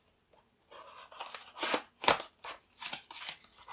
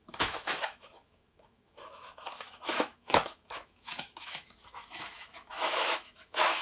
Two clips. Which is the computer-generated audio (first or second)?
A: second